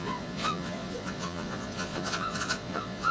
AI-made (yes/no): yes